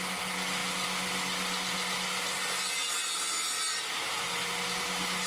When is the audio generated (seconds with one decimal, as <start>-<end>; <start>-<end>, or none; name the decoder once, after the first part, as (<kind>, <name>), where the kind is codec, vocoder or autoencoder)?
none